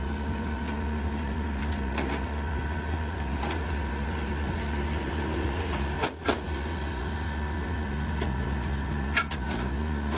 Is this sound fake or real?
fake